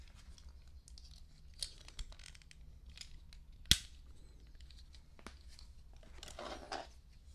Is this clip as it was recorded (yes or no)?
yes